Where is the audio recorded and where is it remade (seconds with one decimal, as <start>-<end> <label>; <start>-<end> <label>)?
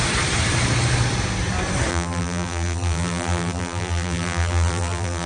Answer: 0.0-1.9 recorded; 1.9-5.3 remade